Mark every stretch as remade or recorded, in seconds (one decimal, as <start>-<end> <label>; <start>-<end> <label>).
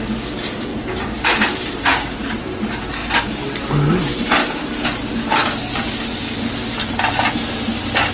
0.0-0.7 recorded; 0.7-2.4 remade; 2.4-4.4 recorded; 4.4-5.0 remade; 5.0-8.1 recorded